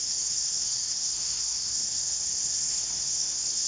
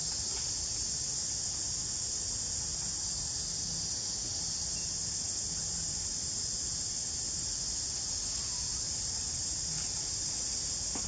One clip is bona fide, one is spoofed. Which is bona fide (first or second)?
second